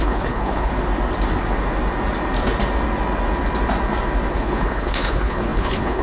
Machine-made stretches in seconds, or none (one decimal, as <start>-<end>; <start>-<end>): 0.0-0.7; 4.3-6.0